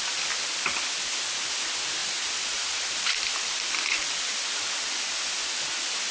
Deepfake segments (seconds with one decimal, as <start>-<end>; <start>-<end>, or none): 2.0-4.3